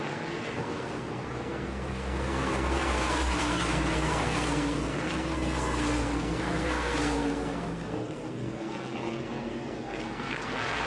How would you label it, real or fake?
fake